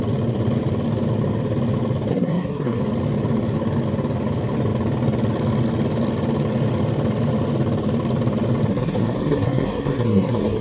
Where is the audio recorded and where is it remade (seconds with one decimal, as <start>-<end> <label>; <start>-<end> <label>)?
0.0-2.1 recorded; 2.1-2.8 remade; 2.8-8.7 recorded; 8.7-10.6 remade